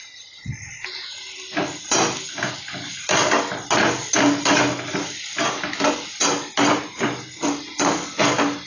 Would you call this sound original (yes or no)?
yes